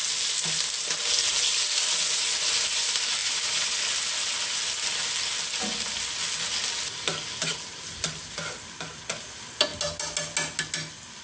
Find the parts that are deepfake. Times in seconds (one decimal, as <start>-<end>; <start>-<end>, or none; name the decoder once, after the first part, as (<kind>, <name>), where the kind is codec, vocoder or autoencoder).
none